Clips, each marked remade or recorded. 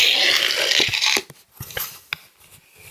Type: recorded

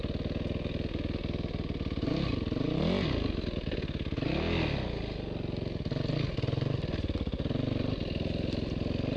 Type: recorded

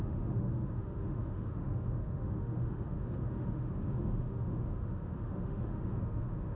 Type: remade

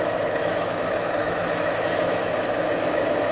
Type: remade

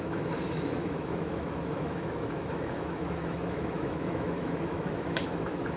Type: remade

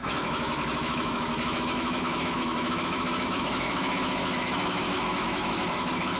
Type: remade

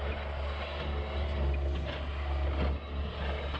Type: recorded